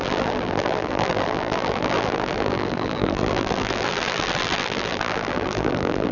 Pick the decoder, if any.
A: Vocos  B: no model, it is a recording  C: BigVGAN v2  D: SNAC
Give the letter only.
C